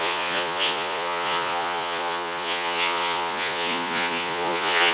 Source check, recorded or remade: remade